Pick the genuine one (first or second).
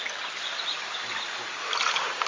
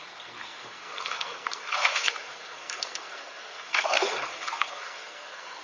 first